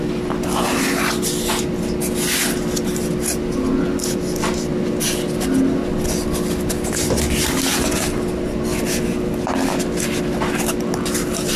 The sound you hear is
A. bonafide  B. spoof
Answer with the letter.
A